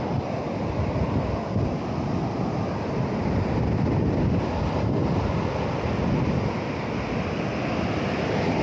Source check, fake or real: real